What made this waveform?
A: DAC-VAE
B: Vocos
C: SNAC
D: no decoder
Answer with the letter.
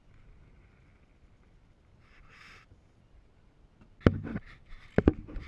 D